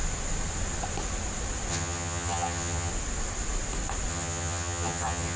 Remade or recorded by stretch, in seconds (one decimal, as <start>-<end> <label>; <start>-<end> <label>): 0.0-1.7 recorded; 1.7-2.9 remade; 2.9-4.1 recorded; 4.1-5.4 remade